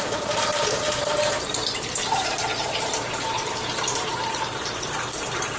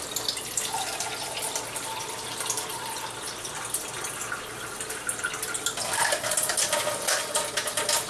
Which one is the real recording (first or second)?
second